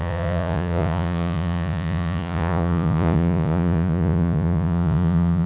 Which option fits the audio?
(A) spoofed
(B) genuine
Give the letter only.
A